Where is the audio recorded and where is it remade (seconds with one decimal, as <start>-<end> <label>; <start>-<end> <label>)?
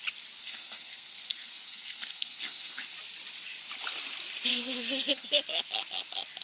0.0-0.4 recorded; 0.4-2.8 remade; 2.8-4.5 recorded; 4.5-5.3 remade; 5.3-6.4 recorded